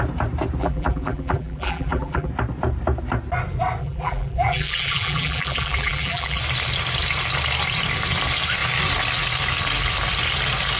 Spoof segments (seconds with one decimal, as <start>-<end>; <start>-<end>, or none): 0.6-2.3; 3.8-6.4